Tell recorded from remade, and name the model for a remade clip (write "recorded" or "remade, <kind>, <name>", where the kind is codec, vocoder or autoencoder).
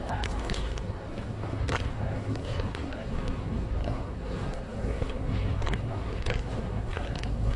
remade, codec, SNAC